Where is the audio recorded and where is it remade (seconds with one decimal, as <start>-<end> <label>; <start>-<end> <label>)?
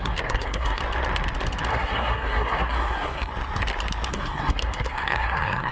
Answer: 0.0-0.8 remade; 0.8-1.7 recorded; 1.7-3.3 remade; 3.3-4.1 recorded; 4.1-5.7 remade